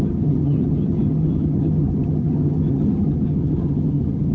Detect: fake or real fake